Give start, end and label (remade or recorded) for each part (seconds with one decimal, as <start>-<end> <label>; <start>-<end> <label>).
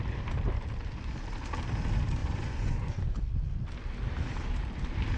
0.0-2.2 recorded; 2.2-3.0 remade; 3.0-5.2 recorded